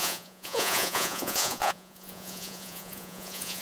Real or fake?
fake